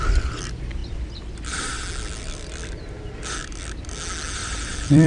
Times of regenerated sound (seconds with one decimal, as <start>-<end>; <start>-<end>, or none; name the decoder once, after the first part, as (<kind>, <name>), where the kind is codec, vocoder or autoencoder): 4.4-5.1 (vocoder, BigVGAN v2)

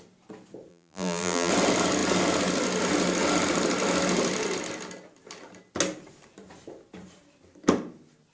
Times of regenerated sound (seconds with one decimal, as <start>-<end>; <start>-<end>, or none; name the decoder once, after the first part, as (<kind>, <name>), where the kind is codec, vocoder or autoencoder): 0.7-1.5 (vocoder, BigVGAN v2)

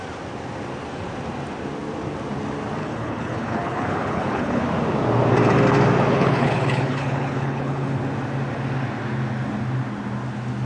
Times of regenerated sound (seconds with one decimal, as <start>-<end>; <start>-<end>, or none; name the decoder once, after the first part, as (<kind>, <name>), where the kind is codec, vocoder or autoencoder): 2.8-4.6 (codec, HILCodec); 6.1-8.0

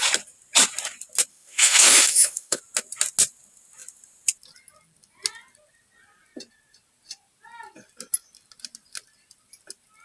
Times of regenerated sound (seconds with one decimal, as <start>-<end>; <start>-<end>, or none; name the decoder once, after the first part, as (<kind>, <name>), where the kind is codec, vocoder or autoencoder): 1.3-2.6 (autoencoder, DAC-VAE)

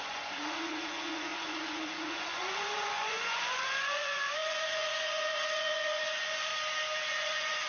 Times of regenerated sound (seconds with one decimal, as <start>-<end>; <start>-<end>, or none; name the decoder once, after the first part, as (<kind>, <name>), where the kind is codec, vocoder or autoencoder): 0.0-6.5 (vocoder, Vocos); 7.1-7.7